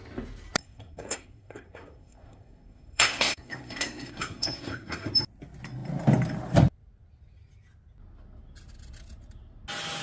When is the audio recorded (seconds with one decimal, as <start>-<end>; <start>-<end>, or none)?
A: 0.0-0.6; 5.1-10.0